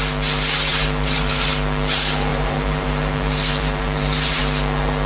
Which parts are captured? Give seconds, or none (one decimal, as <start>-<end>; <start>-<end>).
0.0-0.7; 1.5-2.3; 4.4-5.1